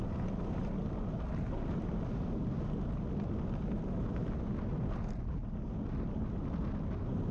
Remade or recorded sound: recorded